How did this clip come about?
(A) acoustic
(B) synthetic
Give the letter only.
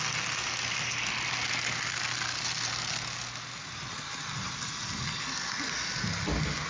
A